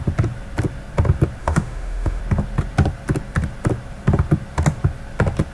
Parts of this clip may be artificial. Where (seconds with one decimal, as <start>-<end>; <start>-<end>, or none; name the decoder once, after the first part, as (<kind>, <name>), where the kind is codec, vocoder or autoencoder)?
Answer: 1.4-2.2 (autoencoder, DAC-VAE)